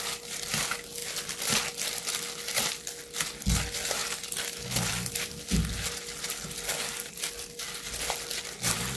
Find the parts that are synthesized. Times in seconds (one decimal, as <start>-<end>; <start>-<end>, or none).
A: none